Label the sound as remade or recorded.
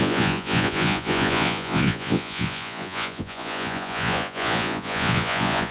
remade